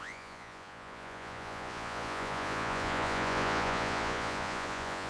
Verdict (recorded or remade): remade